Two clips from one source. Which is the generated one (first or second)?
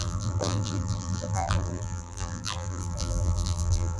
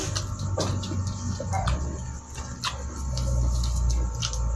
first